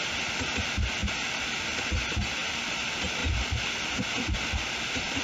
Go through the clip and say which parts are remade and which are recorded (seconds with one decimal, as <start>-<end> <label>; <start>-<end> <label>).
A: 0.0-5.2 recorded